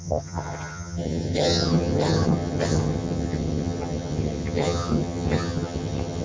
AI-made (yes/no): yes